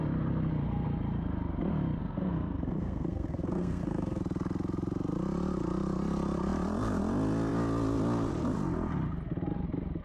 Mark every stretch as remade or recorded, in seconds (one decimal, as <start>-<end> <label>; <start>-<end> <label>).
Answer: 0.0-2.0 recorded; 2.0-4.2 remade; 4.2-10.0 recorded